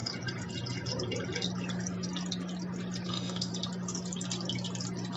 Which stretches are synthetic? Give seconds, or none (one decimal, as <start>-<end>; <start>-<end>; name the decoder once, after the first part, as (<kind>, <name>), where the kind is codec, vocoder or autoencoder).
3.1-3.5 (autoencoder, DAC-VAE)